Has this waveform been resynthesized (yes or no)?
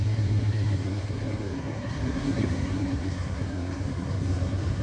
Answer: yes